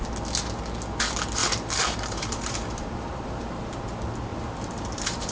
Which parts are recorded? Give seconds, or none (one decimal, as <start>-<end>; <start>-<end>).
0.0-1.4; 3.8-4.3